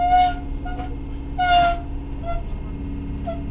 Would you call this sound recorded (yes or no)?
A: yes